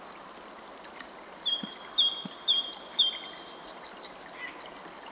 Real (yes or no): yes